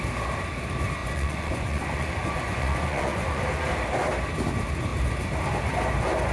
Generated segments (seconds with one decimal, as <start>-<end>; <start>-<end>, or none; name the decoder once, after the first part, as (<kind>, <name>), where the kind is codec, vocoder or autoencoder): 1.0-3.4 (vocoder, Vocos)